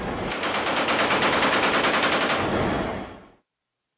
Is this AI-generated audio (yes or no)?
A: no